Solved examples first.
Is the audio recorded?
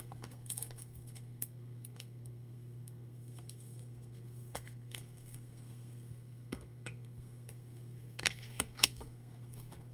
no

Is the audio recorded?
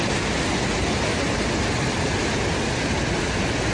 yes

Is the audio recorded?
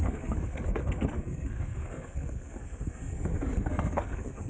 no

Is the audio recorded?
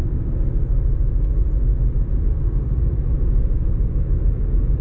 yes